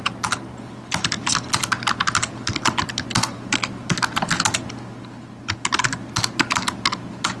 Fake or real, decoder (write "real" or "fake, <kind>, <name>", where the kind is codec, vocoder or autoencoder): real